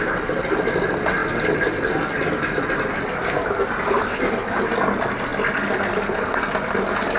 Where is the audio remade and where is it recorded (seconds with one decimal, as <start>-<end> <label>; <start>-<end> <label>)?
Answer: 0.0-7.2 recorded